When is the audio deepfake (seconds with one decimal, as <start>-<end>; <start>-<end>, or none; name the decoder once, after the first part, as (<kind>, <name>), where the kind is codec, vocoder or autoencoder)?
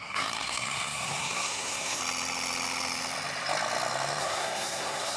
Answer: 0.0-2.0 (codec, SNAC); 4.2-5.2